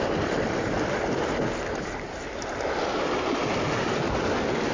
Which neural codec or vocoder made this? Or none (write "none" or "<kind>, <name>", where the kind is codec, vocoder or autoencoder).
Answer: none